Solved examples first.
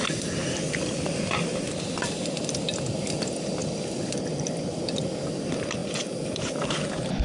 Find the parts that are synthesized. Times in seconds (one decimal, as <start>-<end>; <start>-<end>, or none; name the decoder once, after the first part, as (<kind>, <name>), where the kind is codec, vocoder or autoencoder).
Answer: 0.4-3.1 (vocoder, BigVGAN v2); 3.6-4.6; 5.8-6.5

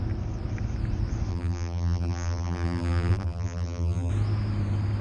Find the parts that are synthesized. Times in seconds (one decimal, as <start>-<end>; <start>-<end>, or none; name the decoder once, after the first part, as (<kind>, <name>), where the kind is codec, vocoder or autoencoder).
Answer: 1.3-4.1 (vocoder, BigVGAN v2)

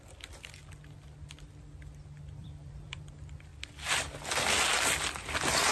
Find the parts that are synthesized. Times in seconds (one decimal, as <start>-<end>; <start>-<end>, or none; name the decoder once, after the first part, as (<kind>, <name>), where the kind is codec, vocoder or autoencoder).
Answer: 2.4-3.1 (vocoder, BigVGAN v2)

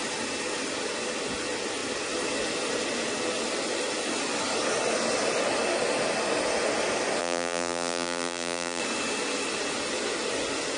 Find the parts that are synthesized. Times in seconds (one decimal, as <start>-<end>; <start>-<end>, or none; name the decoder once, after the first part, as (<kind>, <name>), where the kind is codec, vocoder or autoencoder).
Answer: 7.2-8.8 (vocoder, BigVGAN v2)

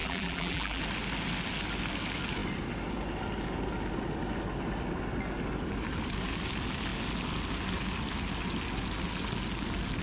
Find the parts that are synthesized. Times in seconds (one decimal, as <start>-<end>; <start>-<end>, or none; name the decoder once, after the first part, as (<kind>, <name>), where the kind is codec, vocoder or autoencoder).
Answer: 0.0-0.8 (vocoder, BigVGAN v2)

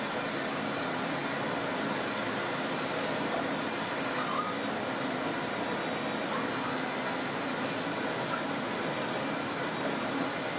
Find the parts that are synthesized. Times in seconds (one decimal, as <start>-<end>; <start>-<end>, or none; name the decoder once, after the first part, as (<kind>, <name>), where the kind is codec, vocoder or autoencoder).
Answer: none